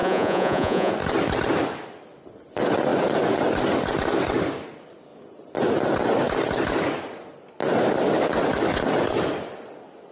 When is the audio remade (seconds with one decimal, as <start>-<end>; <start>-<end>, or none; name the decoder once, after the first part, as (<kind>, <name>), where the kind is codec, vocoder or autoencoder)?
0.0-0.9 (vocoder, Vocos)